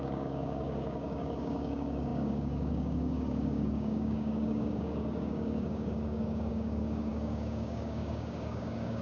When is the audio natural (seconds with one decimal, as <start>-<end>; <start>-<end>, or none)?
none